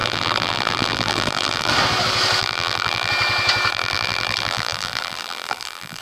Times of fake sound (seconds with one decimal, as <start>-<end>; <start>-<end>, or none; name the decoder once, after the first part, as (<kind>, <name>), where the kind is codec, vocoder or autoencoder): 0.0-1.7 (vocoder, BigVGAN v2); 2.4-3.1; 3.7-6.0